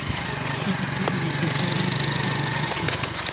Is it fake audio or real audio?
fake